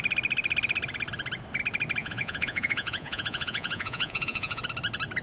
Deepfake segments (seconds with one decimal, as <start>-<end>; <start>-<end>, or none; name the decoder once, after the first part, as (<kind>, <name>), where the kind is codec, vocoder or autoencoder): 2.0-4.6 (vocoder, Vocos)